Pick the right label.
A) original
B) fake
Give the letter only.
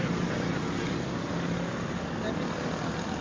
A